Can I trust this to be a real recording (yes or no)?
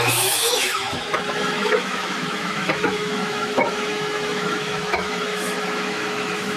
no